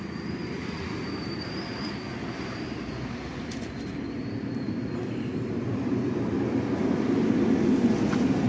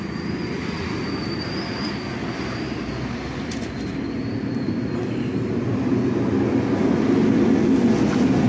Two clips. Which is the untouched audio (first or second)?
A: second